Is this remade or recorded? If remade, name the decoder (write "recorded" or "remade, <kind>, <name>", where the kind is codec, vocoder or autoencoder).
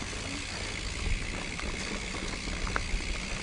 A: recorded